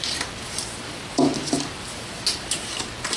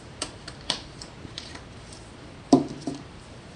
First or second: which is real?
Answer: first